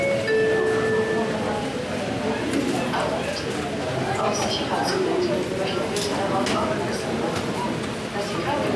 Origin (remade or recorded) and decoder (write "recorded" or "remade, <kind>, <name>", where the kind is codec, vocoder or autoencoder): recorded